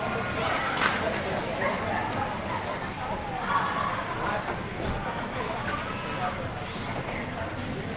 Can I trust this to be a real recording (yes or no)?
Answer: no